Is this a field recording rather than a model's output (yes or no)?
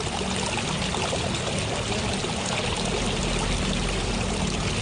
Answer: yes